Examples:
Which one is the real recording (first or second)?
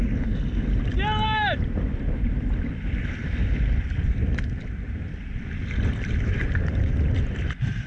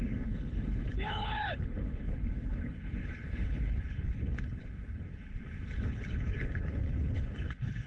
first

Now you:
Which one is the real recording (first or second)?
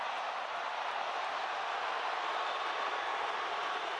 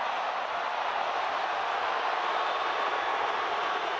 second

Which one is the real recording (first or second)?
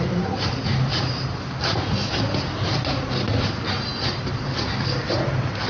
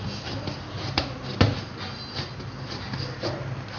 second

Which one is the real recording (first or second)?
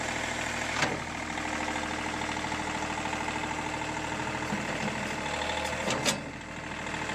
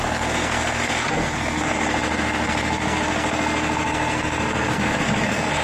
first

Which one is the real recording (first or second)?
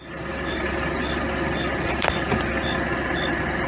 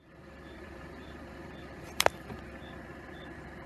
first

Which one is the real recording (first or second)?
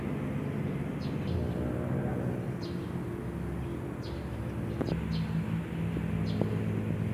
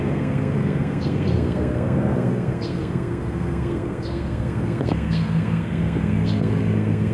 first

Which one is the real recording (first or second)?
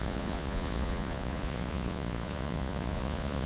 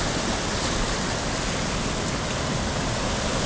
second